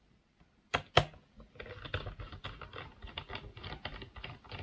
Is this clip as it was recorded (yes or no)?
yes